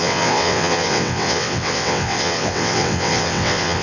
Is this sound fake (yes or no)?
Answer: yes